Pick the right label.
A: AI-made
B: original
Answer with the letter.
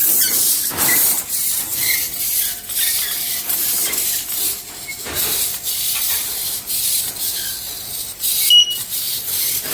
B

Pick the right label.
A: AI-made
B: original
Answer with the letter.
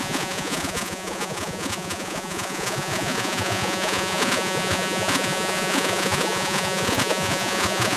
A